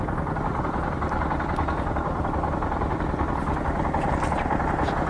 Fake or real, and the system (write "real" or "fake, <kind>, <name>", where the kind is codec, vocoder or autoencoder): real